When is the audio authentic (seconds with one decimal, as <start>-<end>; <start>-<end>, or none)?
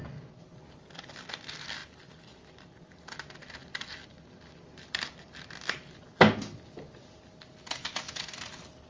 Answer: 0.0-8.9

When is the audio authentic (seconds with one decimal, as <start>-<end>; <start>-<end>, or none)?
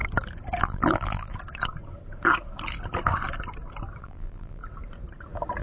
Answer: 0.0-0.6; 1.3-4.0; 4.6-5.6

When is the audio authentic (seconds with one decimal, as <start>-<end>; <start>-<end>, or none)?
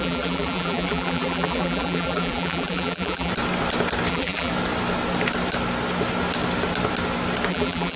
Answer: 3.3-4.1; 4.5-7.5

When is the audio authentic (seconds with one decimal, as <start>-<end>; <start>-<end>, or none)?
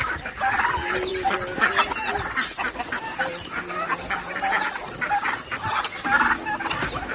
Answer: 0.0-7.1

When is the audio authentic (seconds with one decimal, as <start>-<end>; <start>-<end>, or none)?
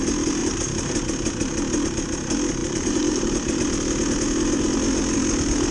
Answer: 0.0-0.4; 1.0-2.6; 3.6-5.7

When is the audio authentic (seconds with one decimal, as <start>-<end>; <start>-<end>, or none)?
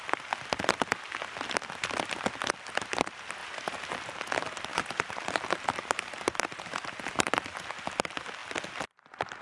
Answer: 0.0-3.4; 4.1-4.7; 7.6-9.4